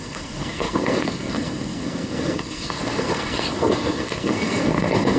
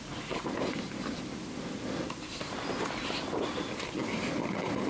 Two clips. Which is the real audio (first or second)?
second